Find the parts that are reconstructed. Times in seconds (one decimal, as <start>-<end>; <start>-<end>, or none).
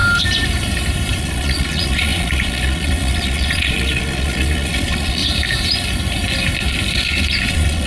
1.2-5.2; 7.5-7.9